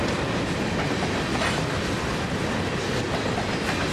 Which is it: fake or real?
real